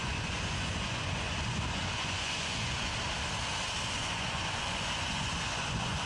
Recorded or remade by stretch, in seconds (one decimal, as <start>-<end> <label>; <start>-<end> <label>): 0.0-2.9 remade; 2.9-3.9 recorded; 3.9-6.1 remade